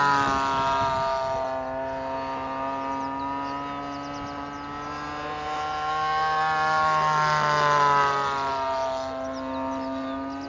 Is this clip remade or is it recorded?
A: recorded